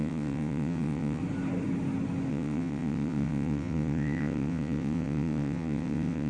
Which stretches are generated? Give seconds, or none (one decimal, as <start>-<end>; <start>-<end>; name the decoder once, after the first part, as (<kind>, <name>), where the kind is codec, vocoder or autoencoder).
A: 0.0-1.2 (vocoder, WaveNeXt); 2.3-6.3